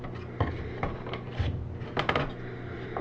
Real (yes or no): yes